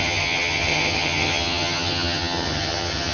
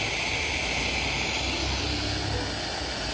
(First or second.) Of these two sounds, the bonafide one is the second